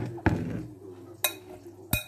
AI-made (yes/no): no